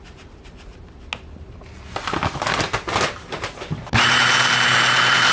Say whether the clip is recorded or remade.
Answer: recorded